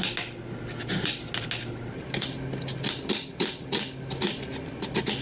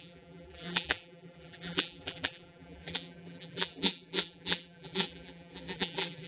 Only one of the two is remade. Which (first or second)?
second